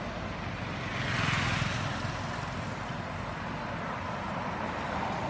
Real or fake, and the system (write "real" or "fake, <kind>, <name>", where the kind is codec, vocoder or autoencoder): real